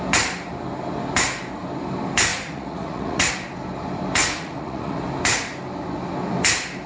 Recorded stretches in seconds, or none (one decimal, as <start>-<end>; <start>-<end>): 0.0-2.3; 3.3-4.2; 5.0-6.9